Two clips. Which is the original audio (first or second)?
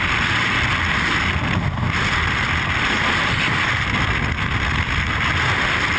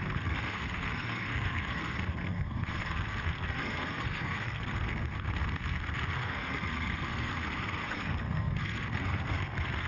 first